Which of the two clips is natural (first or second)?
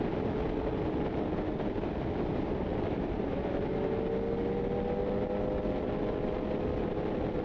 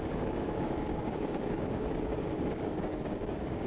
first